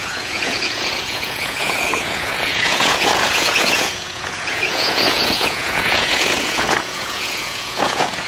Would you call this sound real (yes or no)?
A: no